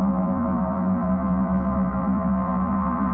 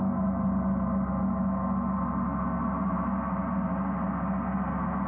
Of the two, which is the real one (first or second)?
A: second